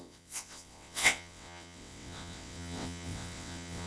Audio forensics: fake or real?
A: fake